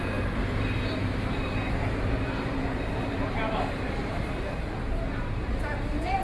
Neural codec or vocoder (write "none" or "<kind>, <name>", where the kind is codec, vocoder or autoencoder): vocoder, BigVGAN v2